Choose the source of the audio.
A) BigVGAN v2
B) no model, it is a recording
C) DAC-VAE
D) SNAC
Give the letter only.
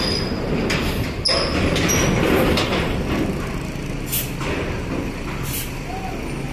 B